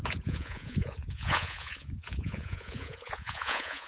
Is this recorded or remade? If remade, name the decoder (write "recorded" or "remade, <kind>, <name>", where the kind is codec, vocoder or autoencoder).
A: remade, vocoder, Vocos